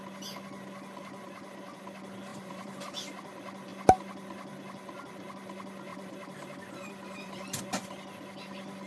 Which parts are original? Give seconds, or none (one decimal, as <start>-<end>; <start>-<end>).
0.0-2.3; 2.8-5.9; 7.6-8.9